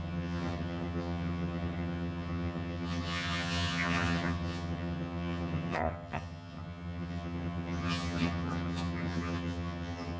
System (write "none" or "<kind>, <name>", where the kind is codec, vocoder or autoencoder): vocoder, HiFi-GAN